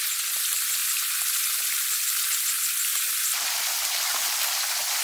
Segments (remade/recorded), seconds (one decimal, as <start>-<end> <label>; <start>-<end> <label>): 0.0-5.0 recorded